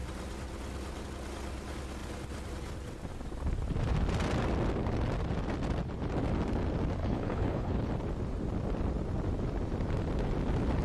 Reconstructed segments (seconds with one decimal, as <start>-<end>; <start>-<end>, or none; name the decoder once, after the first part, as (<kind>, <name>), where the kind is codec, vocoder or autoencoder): 7.0-7.9 (codec, HILCodec)